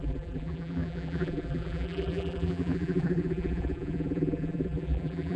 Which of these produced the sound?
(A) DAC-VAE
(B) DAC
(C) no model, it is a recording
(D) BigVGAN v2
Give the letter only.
D